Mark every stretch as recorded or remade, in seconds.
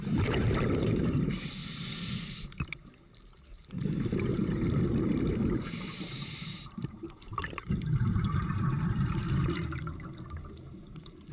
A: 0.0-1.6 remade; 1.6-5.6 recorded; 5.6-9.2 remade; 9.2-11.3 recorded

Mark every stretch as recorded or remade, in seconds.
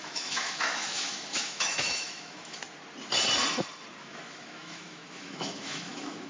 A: 0.0-2.6 remade; 2.6-4.0 recorded; 4.0-6.3 remade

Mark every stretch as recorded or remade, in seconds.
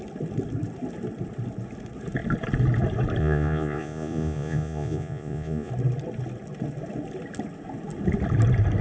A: 0.0-3.2 recorded; 3.2-5.7 remade; 5.7-8.8 recorded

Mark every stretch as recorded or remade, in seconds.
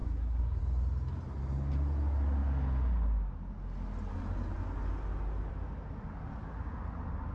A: 0.0-0.6 remade; 0.6-7.3 recorded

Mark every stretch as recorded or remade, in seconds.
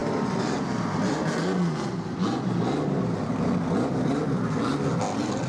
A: 0.0-5.5 recorded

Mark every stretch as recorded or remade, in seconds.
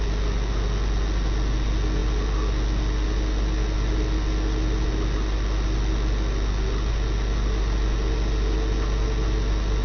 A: 0.0-9.8 recorded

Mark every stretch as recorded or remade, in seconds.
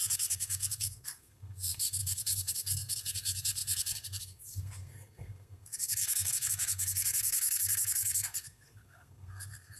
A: 0.0-9.8 remade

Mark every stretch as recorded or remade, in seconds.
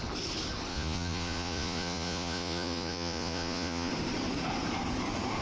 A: 0.0-0.7 recorded; 0.7-3.9 remade; 3.9-5.4 recorded